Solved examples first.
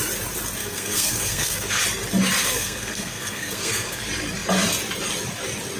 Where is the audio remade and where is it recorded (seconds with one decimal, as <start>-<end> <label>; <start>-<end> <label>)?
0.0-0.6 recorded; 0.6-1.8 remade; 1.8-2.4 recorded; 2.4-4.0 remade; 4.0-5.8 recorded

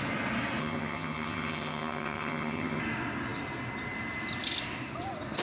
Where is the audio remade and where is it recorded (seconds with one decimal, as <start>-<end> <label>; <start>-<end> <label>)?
0.0-0.6 recorded; 0.6-2.8 remade; 2.8-5.4 recorded

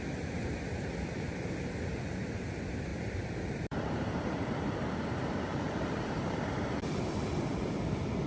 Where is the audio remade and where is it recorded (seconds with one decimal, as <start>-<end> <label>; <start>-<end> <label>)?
0.0-2.9 recorded; 2.9-7.8 remade; 7.8-8.3 recorded

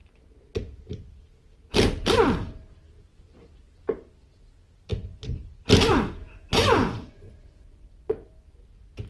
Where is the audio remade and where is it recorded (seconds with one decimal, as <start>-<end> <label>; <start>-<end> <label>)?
0.0-4.9 recorded; 4.9-5.5 remade; 5.5-5.9 recorded; 5.9-8.6 remade; 8.6-9.1 recorded

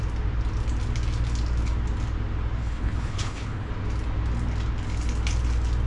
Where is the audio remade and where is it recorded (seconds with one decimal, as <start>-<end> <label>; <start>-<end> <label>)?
0.0-2.6 recorded; 2.6-3.7 remade; 3.7-5.9 recorded

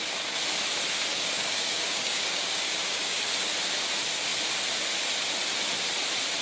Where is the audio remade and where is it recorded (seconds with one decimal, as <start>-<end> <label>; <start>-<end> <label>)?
0.0-1.1 recorded; 1.1-3.5 remade; 3.5-6.4 recorded

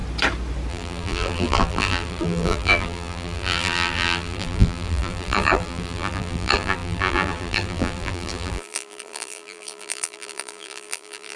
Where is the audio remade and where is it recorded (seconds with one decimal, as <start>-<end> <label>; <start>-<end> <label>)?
0.0-0.7 recorded; 0.7-11.4 remade